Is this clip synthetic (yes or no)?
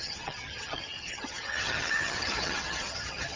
yes